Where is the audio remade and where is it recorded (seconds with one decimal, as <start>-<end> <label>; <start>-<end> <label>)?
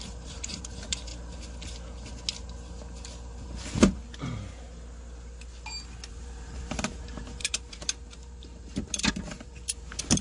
0.0-1.1 remade; 1.1-6.1 recorded; 6.1-10.2 remade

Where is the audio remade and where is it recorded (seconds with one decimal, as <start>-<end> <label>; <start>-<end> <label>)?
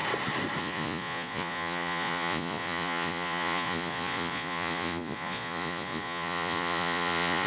0.0-0.6 recorded; 0.6-7.5 remade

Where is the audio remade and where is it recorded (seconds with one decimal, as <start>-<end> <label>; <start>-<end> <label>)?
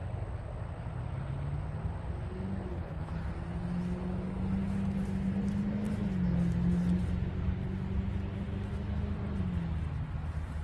0.0-2.7 recorded; 2.7-3.3 remade; 3.3-10.6 recorded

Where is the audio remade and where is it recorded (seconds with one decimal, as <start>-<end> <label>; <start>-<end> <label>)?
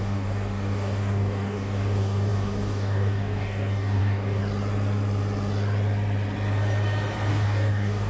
0.0-4.4 remade; 4.4-7.3 recorded; 7.3-8.1 remade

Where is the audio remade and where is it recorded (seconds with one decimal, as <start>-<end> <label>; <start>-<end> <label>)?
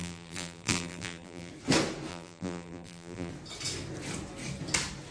0.0-1.5 remade; 1.5-2.1 recorded; 2.1-3.3 remade; 3.3-5.1 recorded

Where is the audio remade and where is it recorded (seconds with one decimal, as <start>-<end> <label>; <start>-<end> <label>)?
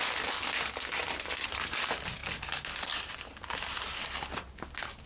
0.0-5.1 recorded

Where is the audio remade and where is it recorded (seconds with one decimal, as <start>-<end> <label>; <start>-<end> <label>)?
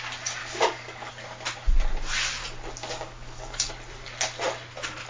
0.0-0.4 recorded; 0.4-1.1 remade; 1.1-2.8 recorded; 2.8-3.7 remade; 3.7-5.1 recorded